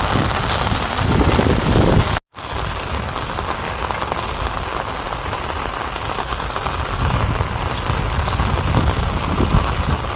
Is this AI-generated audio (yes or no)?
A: no